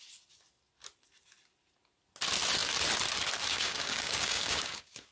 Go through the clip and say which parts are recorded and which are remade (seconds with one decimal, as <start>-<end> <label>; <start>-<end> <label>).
0.0-3.5 recorded; 3.5-5.1 remade